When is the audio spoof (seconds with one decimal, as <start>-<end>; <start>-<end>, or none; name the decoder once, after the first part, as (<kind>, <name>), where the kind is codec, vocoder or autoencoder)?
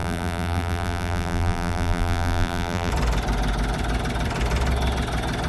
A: 0.0-2.9 (vocoder, BigVGAN v2)